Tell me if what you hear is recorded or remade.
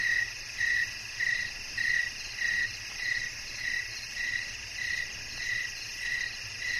recorded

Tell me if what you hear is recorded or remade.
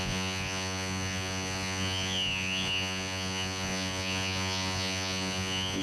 remade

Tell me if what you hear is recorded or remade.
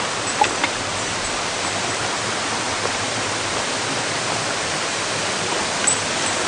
recorded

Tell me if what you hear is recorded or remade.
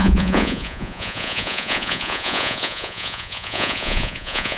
remade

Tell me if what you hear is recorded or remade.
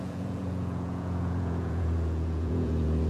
remade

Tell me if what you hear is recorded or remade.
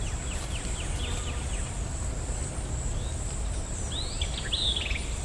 recorded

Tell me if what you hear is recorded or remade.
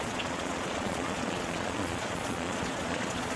remade